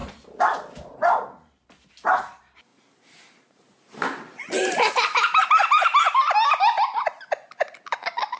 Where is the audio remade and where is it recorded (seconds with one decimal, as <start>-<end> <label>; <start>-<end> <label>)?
0.0-2.7 recorded; 2.7-5.4 remade; 5.4-8.4 recorded